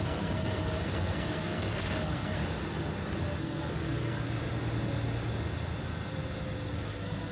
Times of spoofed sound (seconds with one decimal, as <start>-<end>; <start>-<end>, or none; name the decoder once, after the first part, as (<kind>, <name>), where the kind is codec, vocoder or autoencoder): 0.0-2.4 (codec, SNAC); 3.4-4.4; 6.7-7.3